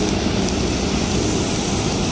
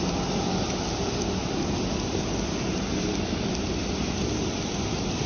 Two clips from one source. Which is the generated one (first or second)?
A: second